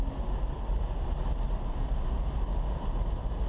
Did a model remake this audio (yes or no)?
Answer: no